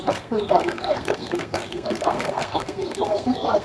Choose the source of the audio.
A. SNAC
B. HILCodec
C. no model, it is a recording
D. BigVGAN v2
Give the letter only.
A